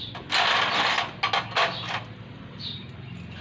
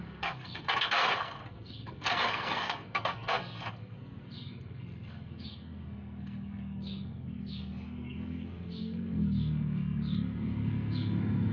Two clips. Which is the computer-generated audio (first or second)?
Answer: second